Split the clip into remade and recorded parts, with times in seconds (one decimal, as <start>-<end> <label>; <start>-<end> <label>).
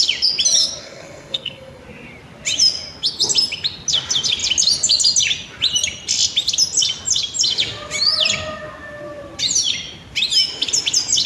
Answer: 0.0-0.8 recorded; 0.8-1.8 remade; 1.8-11.3 recorded